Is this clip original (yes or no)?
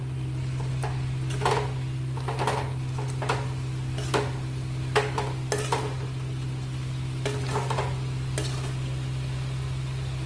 yes